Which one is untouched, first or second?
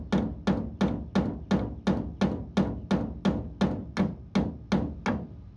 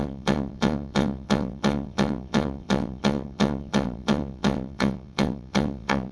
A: first